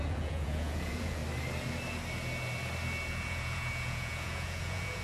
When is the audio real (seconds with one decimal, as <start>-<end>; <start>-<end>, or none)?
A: 1.2-3.1